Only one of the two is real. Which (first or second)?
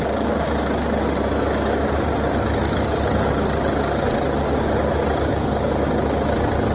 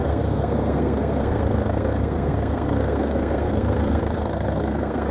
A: first